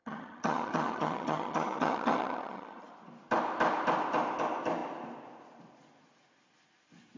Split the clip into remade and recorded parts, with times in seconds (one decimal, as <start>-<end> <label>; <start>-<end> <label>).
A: 0.0-2.9 remade; 2.9-7.2 recorded

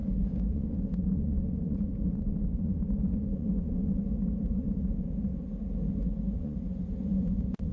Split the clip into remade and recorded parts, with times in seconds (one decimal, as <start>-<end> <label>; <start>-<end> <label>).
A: 0.0-5.3 remade; 5.3-6.0 recorded; 6.0-7.7 remade

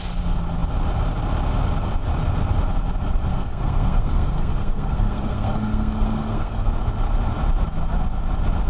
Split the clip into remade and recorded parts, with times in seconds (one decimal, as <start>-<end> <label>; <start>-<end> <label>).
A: 0.0-3.3 recorded; 3.3-6.7 remade; 6.7-8.7 recorded

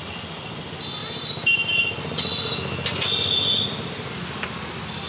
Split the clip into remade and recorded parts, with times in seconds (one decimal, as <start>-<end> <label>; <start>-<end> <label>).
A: 0.0-5.1 recorded

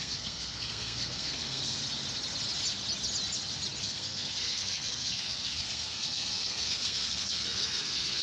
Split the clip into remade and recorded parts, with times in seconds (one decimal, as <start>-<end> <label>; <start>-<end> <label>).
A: 0.0-1.8 remade; 1.8-3.8 recorded; 3.8-8.2 remade